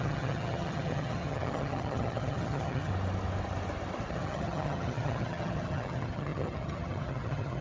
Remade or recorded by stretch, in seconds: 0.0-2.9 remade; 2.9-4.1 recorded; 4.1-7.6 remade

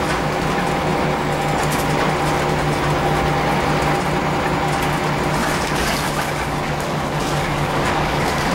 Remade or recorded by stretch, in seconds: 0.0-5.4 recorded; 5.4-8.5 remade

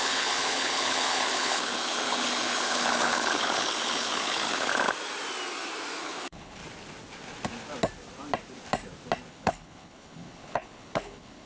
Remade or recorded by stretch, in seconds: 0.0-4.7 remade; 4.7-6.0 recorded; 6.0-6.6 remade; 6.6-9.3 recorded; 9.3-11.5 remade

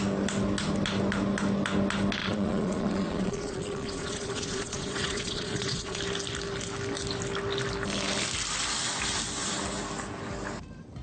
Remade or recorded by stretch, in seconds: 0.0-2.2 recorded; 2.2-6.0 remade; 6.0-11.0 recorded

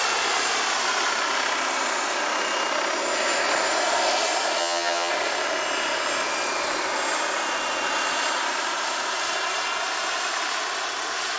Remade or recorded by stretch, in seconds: 0.0-4.6 recorded; 4.6-5.1 remade; 5.1-11.4 recorded